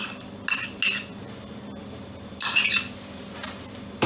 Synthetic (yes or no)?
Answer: no